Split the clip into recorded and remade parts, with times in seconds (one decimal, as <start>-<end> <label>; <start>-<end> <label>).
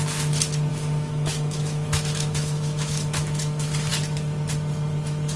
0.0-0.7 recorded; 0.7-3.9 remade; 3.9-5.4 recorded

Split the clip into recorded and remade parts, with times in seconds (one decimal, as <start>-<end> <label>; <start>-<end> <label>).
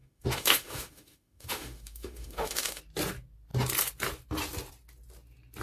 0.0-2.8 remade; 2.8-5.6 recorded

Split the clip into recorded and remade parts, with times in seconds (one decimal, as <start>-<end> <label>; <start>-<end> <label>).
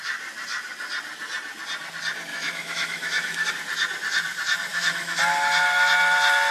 0.0-2.3 recorded; 2.3-3.5 remade; 3.5-4.7 recorded; 4.7-5.2 remade; 5.2-6.5 recorded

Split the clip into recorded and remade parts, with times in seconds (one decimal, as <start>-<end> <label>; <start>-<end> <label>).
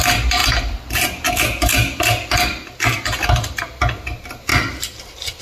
0.0-5.4 recorded